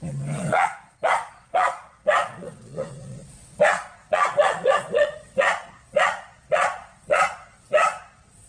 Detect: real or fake fake